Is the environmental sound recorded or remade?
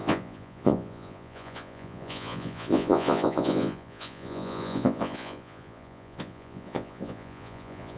remade